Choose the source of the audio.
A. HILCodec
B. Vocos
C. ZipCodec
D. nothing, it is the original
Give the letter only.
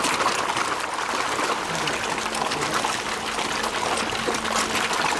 D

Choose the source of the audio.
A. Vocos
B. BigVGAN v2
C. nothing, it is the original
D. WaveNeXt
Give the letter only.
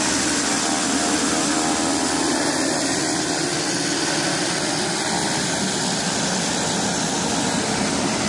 C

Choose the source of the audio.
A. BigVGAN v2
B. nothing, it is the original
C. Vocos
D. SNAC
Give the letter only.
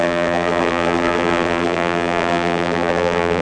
A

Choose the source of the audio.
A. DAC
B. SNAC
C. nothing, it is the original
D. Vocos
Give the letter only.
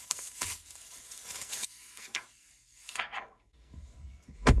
B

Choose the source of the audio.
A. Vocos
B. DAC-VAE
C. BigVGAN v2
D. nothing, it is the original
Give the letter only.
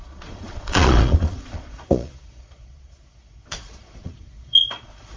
A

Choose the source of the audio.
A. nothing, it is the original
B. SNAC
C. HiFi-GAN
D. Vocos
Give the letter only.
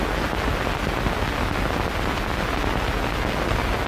A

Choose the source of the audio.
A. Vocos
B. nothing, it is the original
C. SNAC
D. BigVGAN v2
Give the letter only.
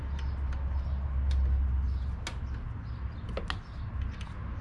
B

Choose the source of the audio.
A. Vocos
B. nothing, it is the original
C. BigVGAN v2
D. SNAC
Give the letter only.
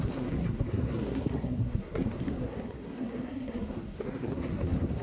D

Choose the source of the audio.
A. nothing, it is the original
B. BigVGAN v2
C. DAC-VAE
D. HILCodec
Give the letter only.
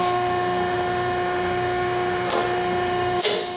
C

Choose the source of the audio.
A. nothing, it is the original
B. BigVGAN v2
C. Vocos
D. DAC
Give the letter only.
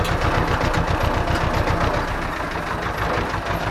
A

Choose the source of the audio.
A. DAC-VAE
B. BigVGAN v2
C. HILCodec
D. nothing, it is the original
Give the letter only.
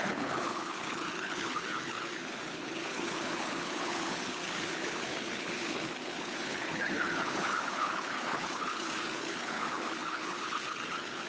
C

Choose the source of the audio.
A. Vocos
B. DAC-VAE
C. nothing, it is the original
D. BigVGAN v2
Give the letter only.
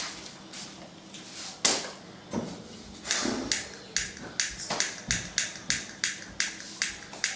C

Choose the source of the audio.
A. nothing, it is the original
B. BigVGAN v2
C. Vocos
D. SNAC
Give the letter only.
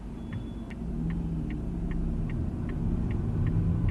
A